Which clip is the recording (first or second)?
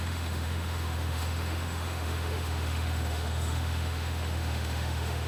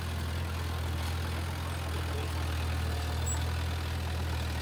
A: second